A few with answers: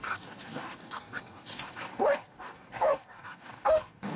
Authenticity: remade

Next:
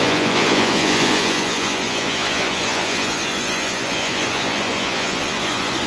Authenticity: remade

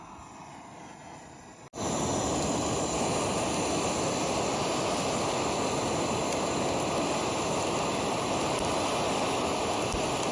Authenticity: recorded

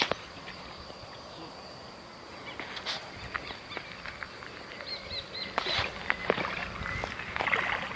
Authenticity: recorded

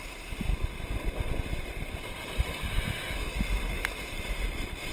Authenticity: recorded